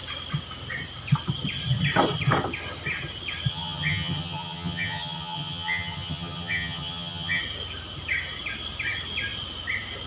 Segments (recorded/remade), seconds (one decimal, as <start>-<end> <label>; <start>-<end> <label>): 0.0-3.5 recorded; 3.5-7.4 remade; 7.4-10.1 recorded